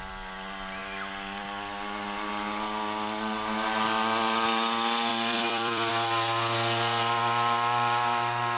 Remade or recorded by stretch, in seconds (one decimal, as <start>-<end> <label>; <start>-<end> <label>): 0.0-5.1 recorded; 5.1-5.9 remade; 5.9-8.6 recorded